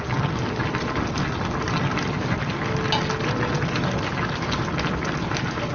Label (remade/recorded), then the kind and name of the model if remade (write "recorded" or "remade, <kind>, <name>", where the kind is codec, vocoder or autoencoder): recorded